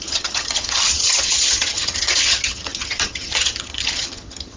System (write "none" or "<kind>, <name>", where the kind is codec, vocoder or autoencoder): vocoder, HiFi-GAN